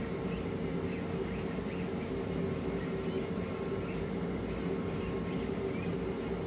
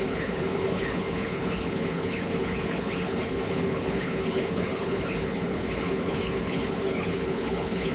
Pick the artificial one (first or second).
second